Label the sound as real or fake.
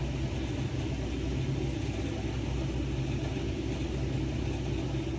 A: real